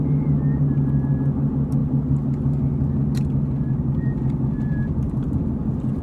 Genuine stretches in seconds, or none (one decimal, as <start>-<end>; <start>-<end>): 0.0-6.0